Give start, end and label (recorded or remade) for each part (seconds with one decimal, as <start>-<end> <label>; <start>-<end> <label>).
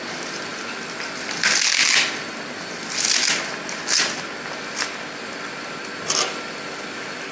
0.0-7.3 recorded